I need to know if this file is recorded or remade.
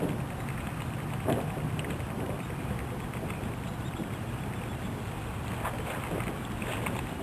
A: recorded